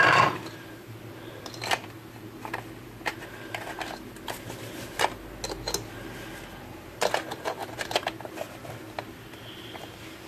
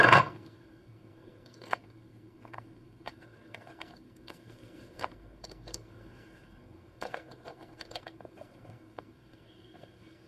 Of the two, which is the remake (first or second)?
second